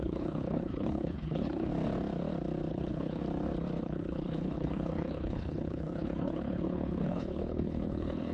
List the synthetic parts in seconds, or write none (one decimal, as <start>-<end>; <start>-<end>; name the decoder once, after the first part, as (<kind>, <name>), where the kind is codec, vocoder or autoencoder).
0.0-1.7 (codec, HILCodec); 2.7-3.2; 3.8-8.3